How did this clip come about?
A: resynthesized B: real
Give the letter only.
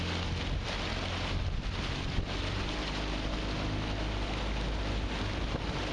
B